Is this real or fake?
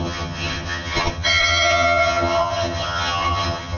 fake